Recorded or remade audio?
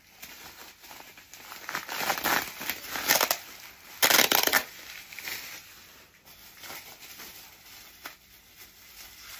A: recorded